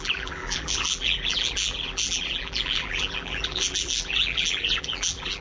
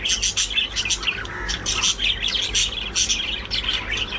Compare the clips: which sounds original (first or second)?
second